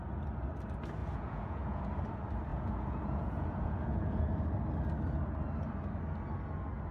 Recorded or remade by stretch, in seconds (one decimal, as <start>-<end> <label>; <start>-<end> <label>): 0.0-1.0 recorded; 1.0-1.8 remade; 1.8-2.5 recorded; 2.5-4.2 remade; 4.2-6.9 recorded